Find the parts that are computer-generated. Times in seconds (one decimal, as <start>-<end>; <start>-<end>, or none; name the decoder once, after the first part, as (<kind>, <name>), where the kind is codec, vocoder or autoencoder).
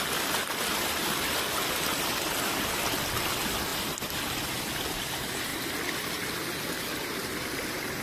none